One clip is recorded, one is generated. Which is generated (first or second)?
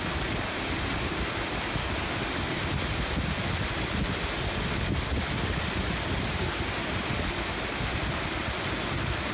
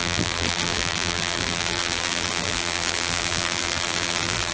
second